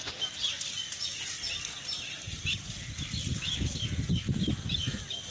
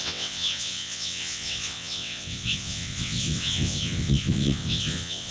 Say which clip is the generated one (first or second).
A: second